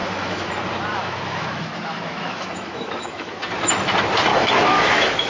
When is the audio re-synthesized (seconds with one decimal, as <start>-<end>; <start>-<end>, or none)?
0.0-0.5; 0.9-3.4; 4.3-5.3